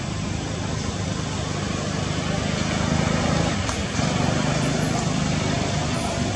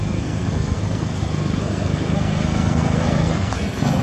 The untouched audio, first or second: first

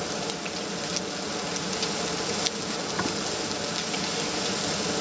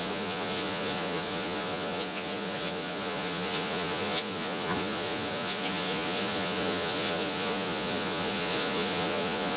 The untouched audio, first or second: first